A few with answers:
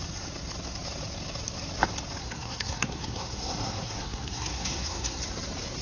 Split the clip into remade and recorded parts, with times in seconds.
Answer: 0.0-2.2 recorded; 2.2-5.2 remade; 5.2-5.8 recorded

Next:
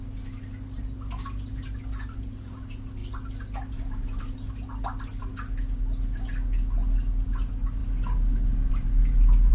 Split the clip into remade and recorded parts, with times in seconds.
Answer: 0.0-9.5 recorded

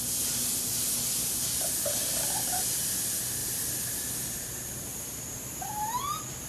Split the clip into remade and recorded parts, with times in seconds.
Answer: 0.0-4.9 recorded; 4.9-6.0 remade; 6.0-6.5 recorded

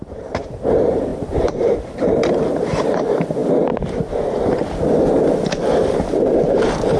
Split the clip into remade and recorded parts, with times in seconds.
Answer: 0.0-3.4 remade; 3.4-5.9 recorded; 5.9-7.0 remade